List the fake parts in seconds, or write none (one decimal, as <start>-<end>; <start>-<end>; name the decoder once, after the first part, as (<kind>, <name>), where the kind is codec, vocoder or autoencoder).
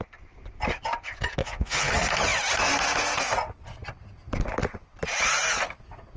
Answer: 1.4-1.9 (vocoder, Vocos)